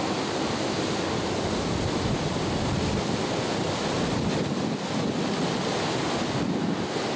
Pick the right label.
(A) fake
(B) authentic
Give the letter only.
B